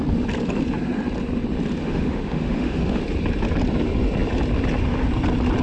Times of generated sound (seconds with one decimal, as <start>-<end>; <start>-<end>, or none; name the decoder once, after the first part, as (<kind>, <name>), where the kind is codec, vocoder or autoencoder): 1.8-3.0 (autoencoder, DAC-VAE)